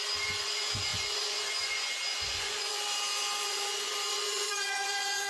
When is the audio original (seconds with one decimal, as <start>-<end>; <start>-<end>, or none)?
none